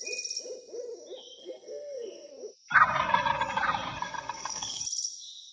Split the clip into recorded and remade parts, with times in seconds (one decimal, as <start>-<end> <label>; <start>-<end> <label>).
0.0-1.4 recorded; 1.4-2.3 remade; 2.3-4.0 recorded; 4.0-4.8 remade; 4.8-5.5 recorded